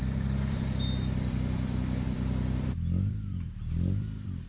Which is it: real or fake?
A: fake